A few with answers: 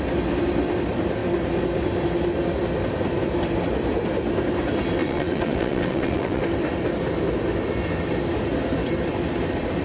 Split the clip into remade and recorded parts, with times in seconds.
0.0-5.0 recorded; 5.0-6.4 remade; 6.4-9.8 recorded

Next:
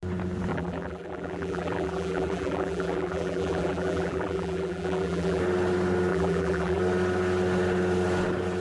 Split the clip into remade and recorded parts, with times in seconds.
0.0-0.5 recorded; 0.5-5.4 remade; 5.4-6.1 recorded; 6.1-6.8 remade; 6.8-8.6 recorded

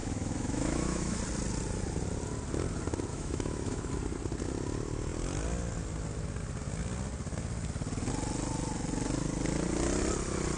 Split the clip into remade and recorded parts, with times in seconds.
0.0-1.2 remade; 1.2-3.1 recorded; 3.1-3.9 remade; 3.9-10.6 recorded